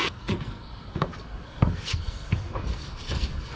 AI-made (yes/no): yes